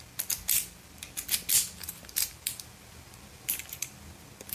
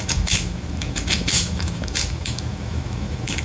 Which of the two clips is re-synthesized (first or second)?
second